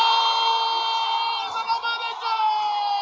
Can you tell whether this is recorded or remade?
recorded